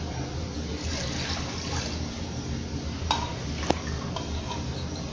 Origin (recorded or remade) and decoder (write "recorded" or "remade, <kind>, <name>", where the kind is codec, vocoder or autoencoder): recorded